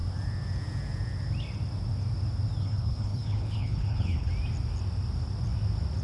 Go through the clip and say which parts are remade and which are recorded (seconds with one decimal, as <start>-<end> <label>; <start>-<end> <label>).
0.0-2.6 recorded; 2.6-4.3 remade; 4.3-6.0 recorded